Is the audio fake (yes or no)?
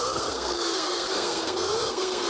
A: yes